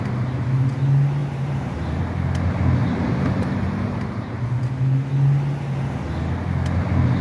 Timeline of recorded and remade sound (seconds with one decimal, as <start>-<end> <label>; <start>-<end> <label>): 0.0-1.2 recorded; 1.2-2.0 remade; 2.0-2.8 recorded; 2.8-4.4 remade; 4.4-7.2 recorded

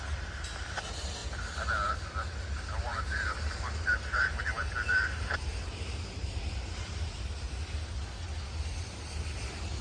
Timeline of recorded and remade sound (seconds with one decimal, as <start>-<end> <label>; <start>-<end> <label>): 0.0-2.9 recorded; 2.9-7.6 remade; 7.6-9.8 recorded

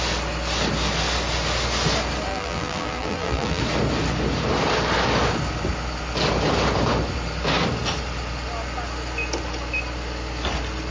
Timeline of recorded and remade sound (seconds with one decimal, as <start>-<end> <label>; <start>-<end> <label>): 0.0-2.3 recorded; 2.3-3.6 remade; 3.6-10.9 recorded